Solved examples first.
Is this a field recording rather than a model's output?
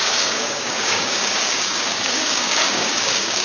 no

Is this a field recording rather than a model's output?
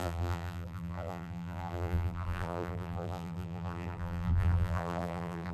no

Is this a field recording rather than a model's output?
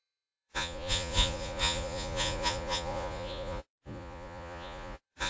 no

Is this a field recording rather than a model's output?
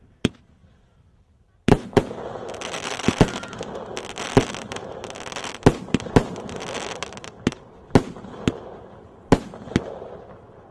yes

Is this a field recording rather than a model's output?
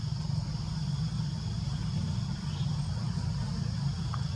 yes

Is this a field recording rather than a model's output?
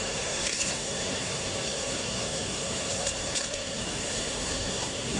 no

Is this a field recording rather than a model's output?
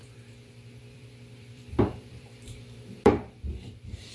no